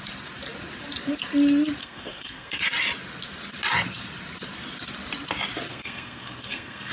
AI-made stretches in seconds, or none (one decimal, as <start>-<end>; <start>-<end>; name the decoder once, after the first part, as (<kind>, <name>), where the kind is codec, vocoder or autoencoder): 1.8-2.6 (codec, SNAC); 5.7-6.9